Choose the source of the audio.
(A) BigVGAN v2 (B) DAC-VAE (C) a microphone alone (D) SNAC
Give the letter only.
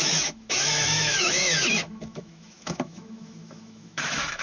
B